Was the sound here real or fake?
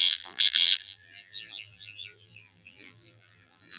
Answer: fake